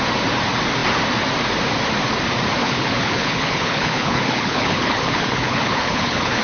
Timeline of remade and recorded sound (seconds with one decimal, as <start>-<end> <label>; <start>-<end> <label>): 0.0-2.6 recorded; 2.6-6.4 remade